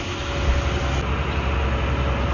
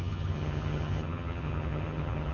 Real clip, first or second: first